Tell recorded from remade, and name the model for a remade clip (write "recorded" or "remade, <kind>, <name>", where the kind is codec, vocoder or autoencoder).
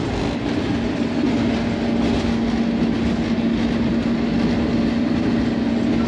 recorded